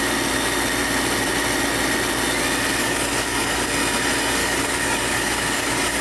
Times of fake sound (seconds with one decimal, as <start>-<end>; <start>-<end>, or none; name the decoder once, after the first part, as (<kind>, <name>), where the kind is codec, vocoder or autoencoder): 2.8-3.7 (codec, DAC); 4.4-6.0